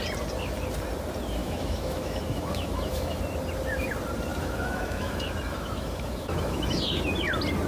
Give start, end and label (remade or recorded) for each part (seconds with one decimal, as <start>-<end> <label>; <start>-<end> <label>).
0.0-1.4 recorded; 1.4-3.2 remade; 3.2-4.3 recorded; 4.3-6.8 remade; 6.8-7.7 recorded